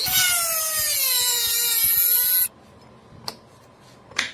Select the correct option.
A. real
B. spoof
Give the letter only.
A